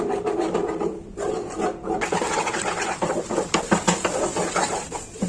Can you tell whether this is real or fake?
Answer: real